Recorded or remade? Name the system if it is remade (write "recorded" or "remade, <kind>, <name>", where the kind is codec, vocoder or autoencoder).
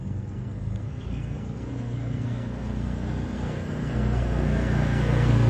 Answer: remade, codec, SNAC